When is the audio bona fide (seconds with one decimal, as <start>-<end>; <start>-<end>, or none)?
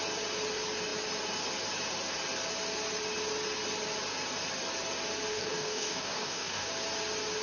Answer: 0.0-5.3; 6.7-7.4